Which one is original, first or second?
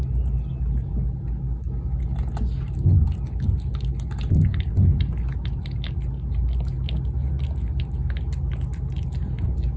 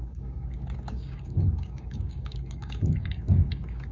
first